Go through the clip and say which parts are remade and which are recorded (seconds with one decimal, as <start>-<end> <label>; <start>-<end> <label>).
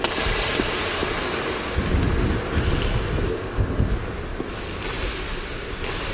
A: 0.0-3.3 recorded; 3.3-3.9 remade; 3.9-6.1 recorded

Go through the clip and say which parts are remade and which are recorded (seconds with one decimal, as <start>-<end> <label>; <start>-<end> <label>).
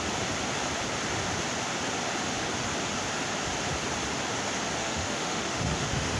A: 0.0-4.8 recorded; 4.8-6.2 remade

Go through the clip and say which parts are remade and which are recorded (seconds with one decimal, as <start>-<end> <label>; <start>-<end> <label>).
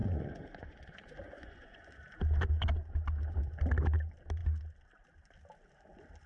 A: 0.0-1.9 remade; 1.9-6.3 recorded